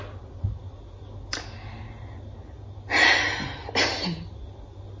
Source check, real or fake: real